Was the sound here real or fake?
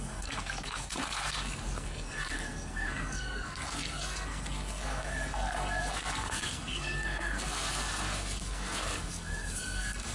fake